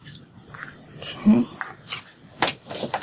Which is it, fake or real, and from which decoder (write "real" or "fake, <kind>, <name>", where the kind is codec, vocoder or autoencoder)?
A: real